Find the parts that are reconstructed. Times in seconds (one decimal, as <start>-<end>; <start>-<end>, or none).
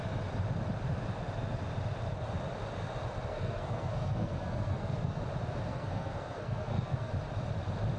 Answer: 3.3-5.2; 5.7-7.1